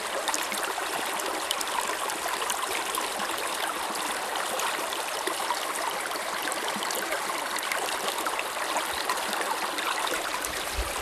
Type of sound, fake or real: real